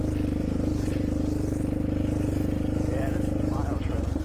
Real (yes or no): yes